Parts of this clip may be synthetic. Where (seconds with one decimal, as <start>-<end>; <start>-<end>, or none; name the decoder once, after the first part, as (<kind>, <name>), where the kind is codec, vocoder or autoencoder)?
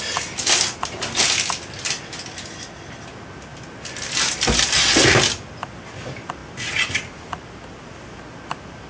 none